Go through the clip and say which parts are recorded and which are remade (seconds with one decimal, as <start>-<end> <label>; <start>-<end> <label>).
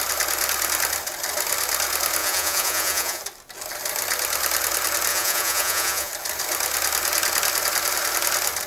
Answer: 0.0-2.2 recorded; 2.2-3.2 remade; 3.2-5.1 recorded; 5.1-6.1 remade; 6.1-8.7 recorded